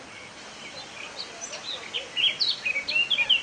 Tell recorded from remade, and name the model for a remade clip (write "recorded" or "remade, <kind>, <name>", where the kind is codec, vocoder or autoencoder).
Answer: recorded